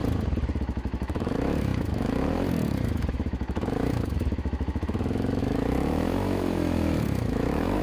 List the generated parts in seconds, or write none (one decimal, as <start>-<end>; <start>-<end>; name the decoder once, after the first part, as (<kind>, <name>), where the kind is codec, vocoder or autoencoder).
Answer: 0.6-7.8 (autoencoder, DAC-VAE)